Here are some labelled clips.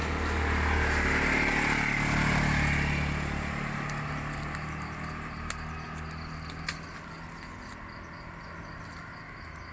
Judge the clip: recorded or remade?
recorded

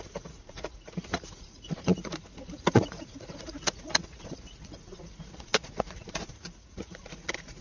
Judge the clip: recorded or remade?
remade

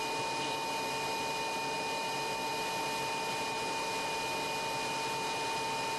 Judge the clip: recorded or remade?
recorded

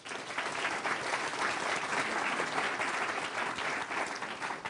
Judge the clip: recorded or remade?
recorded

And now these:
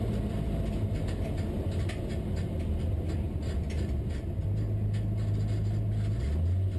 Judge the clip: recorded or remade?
recorded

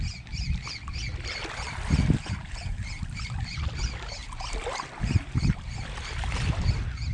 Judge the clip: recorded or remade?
recorded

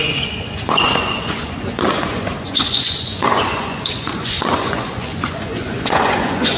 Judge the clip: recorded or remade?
remade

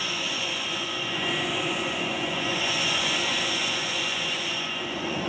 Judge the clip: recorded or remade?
remade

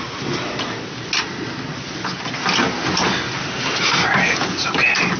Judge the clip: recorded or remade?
recorded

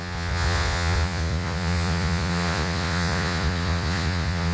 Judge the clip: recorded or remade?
remade